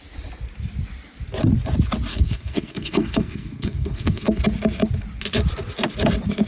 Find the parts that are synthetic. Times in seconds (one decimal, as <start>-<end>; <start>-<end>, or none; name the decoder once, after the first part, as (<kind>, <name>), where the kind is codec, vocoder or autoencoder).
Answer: 2.1-4.4 (codec, SNAC)

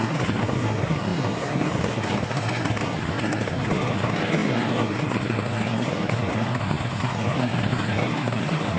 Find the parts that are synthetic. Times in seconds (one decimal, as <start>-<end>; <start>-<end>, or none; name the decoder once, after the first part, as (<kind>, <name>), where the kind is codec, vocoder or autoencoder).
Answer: 0.0-8.8 (codec, SNAC)

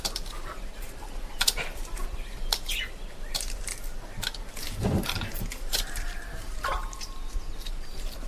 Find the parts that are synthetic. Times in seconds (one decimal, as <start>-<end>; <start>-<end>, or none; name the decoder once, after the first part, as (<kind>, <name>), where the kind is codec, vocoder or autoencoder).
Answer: 0.0-3.7 (vocoder, BigVGAN v2); 4.5-8.3

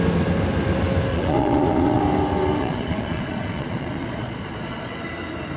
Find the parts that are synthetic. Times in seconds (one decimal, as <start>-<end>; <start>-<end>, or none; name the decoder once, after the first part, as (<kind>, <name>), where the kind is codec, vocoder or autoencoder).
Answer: 1.1-2.0 (vocoder, Vocos); 2.6-4.9

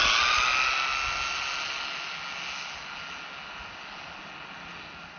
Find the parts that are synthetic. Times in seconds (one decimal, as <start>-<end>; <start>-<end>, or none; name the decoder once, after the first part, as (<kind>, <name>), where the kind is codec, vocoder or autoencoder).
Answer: none